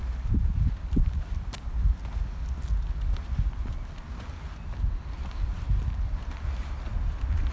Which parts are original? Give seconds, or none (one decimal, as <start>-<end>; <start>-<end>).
2.0-7.5